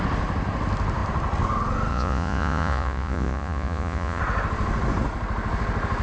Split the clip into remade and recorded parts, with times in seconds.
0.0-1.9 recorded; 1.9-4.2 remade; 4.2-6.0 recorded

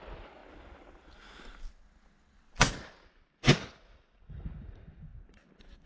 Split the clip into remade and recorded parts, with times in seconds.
0.0-5.9 recorded

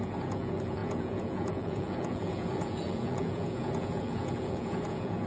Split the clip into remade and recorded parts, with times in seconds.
0.0-5.3 remade

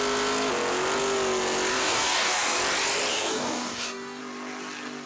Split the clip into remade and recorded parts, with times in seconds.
0.0-1.7 recorded; 1.7-2.6 remade; 2.6-3.1 recorded; 3.1-4.2 remade; 4.2-5.1 recorded

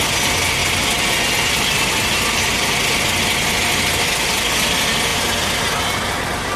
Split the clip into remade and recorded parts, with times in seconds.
0.0-6.6 recorded

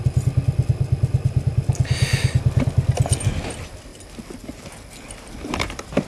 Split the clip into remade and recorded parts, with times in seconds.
0.0-6.1 recorded